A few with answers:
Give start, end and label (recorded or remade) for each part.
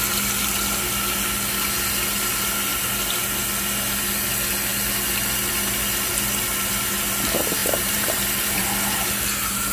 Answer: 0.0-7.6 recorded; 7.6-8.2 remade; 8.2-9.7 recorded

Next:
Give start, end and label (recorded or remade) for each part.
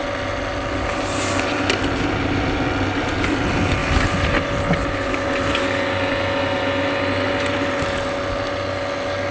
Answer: 0.0-9.3 recorded